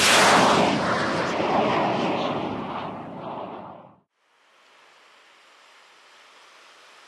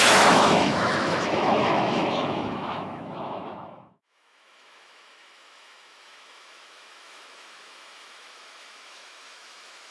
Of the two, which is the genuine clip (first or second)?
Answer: first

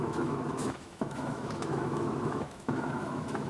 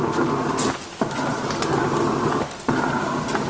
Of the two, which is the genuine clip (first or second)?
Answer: second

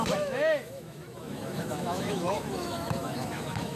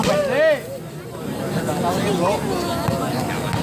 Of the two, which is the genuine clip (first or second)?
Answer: second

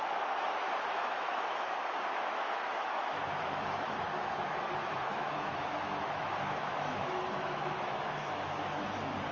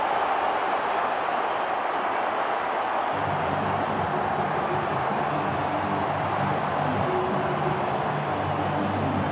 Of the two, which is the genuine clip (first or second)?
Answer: second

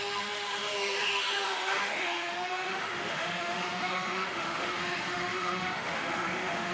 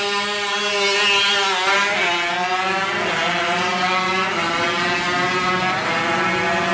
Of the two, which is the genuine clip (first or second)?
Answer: second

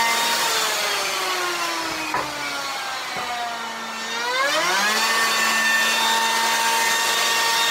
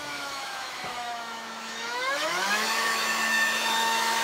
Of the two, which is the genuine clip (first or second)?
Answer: first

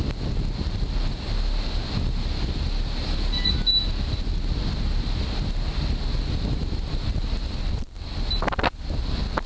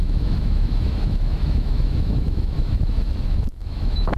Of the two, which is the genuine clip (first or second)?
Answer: first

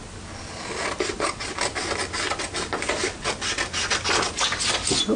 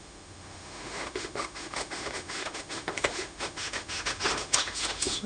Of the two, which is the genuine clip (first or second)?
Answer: first